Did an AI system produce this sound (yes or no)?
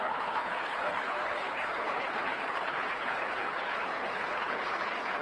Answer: yes